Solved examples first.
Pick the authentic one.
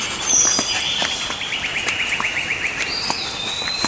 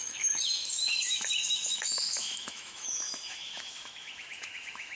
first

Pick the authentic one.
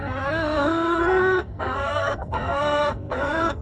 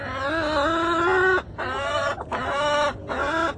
second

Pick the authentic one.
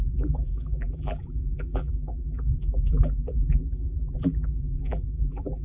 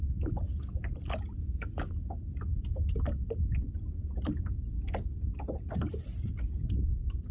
second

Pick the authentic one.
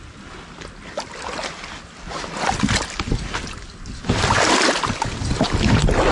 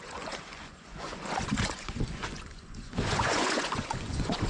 first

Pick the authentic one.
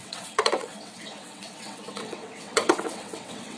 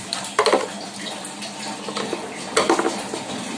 second